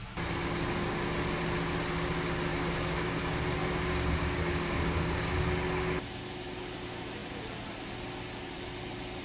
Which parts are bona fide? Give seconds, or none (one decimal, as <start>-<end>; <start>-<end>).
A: 0.0-2.5; 3.2-3.6; 5.3-9.2